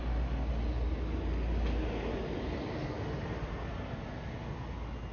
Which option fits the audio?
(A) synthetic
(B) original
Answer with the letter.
B